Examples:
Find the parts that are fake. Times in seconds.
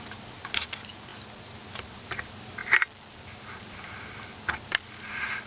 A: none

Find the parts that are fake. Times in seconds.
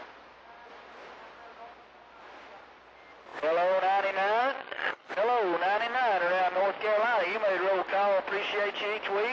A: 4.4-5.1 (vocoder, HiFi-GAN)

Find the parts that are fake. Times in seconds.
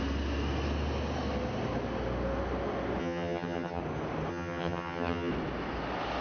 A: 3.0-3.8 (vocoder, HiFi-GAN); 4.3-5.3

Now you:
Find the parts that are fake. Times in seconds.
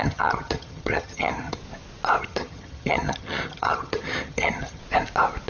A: 0.0-1.6 (vocoder, HiFi-GAN); 2.2-4.8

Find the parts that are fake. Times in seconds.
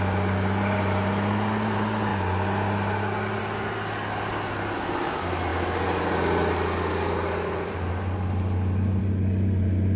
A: none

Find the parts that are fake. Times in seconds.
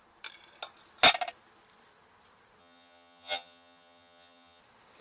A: 2.6-4.6 (vocoder, HiFi-GAN)